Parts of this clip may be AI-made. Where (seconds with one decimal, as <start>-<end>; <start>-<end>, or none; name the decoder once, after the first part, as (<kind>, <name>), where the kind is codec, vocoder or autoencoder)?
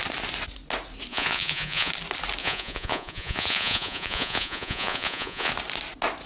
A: 1.1-1.9 (vocoder, Vocos); 2.4-5.5